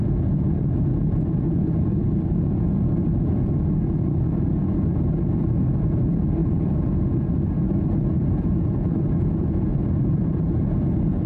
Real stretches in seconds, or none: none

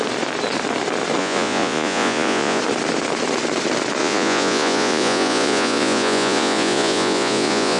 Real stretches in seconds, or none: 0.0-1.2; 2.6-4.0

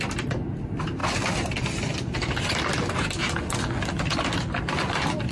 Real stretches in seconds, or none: 0.0-5.3

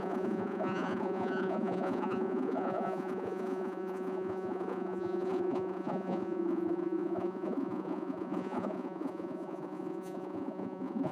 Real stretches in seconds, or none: none

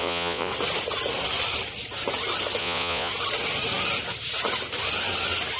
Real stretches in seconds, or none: 0.5-2.6; 3.1-5.6

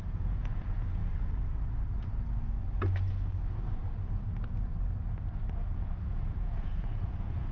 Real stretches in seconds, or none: 1.0-5.5

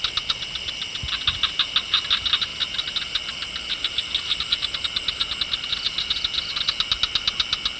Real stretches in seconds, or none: 0.0-7.8